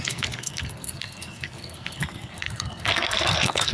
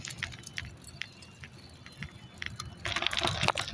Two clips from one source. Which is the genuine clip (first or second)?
second